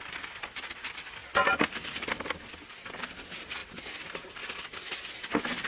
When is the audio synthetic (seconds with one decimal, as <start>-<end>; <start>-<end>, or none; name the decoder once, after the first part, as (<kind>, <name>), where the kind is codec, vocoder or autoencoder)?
none